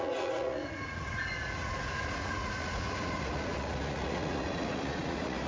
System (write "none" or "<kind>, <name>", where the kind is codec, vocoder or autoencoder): vocoder, Vocos